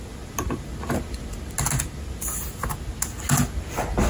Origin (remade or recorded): recorded